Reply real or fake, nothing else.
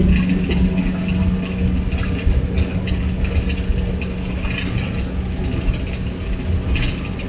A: real